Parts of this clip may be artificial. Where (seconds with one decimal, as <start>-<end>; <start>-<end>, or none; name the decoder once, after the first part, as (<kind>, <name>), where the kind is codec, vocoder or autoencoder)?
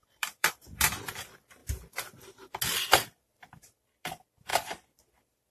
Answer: 0.0-1.6 (vocoder, BigVGAN v2); 2.8-5.5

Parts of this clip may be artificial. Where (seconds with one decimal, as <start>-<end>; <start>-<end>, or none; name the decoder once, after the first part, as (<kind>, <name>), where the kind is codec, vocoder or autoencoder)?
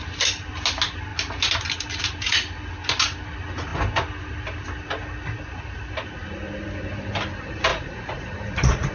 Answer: 7.7-8.9 (vocoder, Vocos)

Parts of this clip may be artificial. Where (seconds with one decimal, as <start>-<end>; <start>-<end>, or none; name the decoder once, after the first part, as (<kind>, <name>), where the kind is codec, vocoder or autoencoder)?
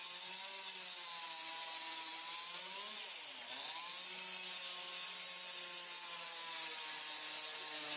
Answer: none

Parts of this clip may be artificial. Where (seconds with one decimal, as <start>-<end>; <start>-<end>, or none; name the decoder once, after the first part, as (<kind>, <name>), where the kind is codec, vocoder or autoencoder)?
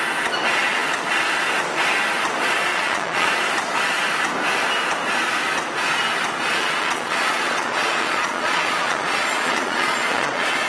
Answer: 2.7-3.3 (vocoder, Vocos); 6.5-10.7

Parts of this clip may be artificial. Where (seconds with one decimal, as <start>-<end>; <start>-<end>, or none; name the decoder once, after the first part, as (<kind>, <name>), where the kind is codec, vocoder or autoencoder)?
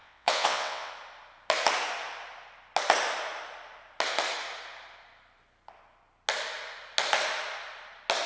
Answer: 0.0-0.9 (vocoder, WaveNeXt)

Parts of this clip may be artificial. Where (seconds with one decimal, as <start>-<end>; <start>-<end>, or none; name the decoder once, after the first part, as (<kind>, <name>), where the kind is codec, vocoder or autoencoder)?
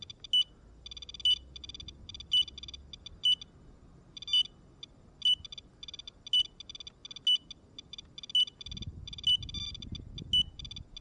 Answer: none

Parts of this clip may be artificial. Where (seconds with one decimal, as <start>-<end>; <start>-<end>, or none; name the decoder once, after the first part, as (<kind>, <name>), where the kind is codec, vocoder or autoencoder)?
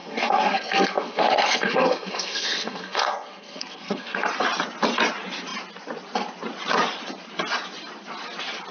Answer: 0.0-4.3 (codec, SNAC)